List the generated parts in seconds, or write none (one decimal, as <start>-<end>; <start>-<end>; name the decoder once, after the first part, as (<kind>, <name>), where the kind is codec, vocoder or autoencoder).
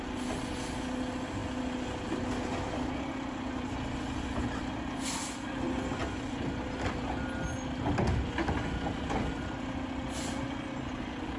none